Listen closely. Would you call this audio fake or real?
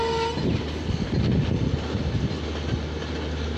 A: real